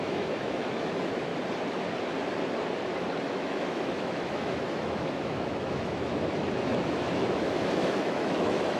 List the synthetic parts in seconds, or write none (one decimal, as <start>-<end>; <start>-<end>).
0.0-1.3; 3.2-8.8